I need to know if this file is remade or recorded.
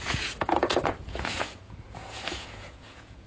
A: remade